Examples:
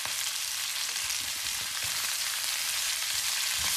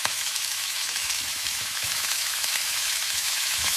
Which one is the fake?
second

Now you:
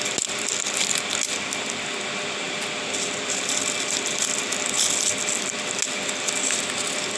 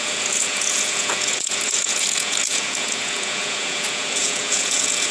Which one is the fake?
second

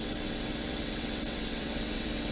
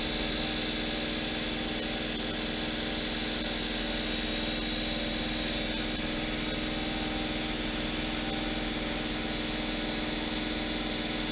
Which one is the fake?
first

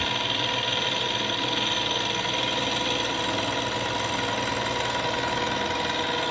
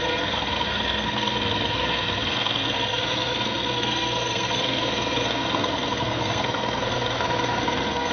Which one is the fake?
second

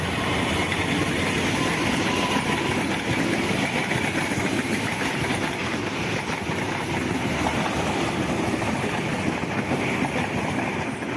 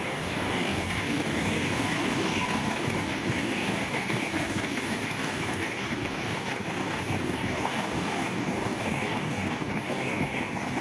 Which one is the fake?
second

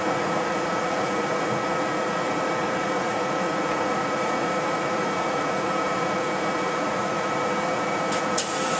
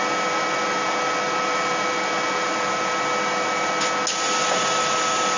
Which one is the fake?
first